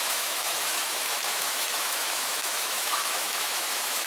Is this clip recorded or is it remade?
remade